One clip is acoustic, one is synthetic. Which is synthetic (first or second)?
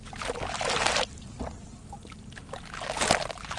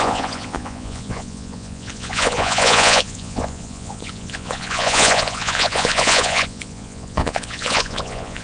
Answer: second